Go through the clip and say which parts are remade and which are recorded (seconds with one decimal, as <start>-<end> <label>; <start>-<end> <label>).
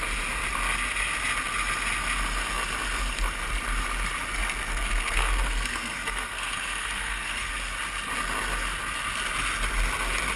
0.0-4.7 recorded; 4.7-7.5 remade; 7.5-10.4 recorded